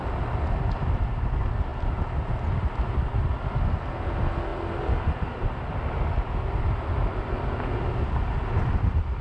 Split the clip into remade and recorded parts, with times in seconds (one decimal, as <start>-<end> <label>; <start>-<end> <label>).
0.0-9.2 recorded